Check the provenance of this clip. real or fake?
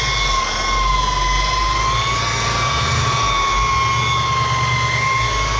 real